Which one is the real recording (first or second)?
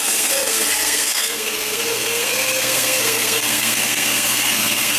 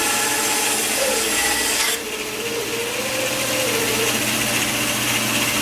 second